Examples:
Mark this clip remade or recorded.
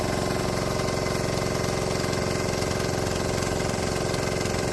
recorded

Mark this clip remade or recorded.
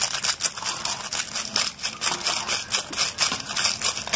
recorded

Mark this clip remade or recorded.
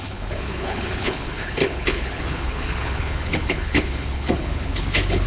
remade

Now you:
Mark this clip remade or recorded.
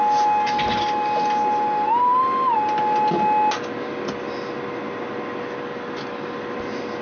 recorded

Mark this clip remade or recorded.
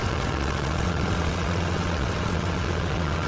remade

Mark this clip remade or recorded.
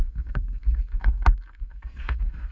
remade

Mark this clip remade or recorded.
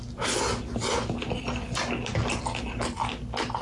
recorded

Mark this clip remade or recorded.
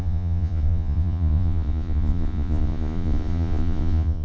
remade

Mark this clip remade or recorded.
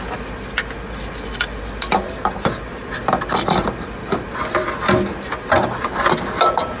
recorded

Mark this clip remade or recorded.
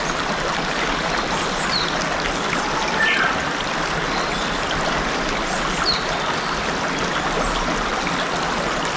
recorded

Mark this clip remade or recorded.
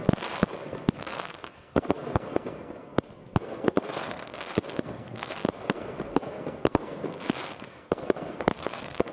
remade